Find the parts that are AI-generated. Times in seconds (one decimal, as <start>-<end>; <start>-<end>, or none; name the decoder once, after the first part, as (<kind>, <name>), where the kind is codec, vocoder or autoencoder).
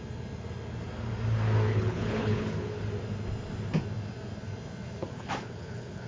1.7-2.8 (codec, HILCodec); 5.0-6.1